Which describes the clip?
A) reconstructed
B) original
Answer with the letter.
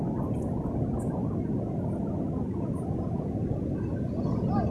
B